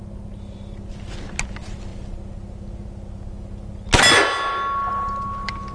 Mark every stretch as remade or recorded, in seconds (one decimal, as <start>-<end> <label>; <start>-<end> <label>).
0.0-5.7 recorded